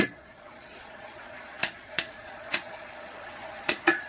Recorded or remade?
remade